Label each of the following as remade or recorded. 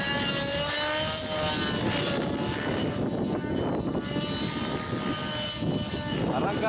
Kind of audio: recorded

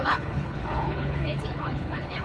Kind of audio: remade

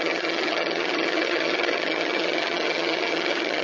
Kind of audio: remade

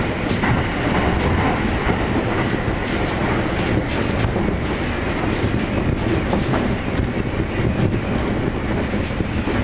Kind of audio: recorded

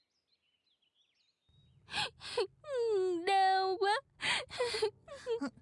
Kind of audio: recorded